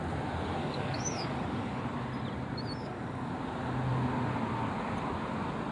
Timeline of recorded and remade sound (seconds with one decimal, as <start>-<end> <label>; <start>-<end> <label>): 0.0-0.6 recorded; 0.6-1.8 remade; 1.8-2.8 recorded; 2.8-3.3 remade; 3.3-5.7 recorded